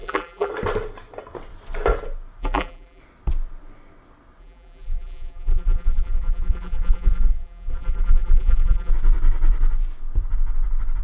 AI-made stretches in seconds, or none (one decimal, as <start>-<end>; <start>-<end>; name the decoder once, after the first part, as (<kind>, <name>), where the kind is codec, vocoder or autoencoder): 0.0-0.5 (vocoder, BigVGAN v2); 2.4-3.0; 4.4-8.9